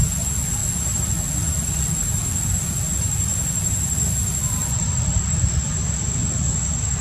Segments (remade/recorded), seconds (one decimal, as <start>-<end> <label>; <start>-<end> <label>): 0.0-7.0 recorded